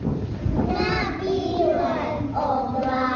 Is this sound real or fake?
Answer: fake